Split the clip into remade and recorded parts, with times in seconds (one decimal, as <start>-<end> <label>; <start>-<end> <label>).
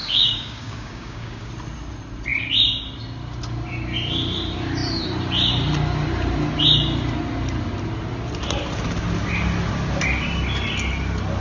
0.0-1.5 remade; 1.5-11.4 recorded